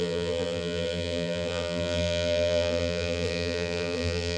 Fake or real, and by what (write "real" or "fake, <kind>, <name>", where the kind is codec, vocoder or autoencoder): fake, vocoder, BigVGAN v2